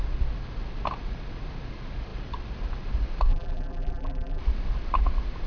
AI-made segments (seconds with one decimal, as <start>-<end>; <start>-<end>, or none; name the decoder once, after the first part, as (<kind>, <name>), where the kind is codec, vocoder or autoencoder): 3.3-4.4 (vocoder, BigVGAN v2)